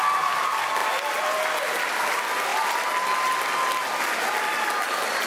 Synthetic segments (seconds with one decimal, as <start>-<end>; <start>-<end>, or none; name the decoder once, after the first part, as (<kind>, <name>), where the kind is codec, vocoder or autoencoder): none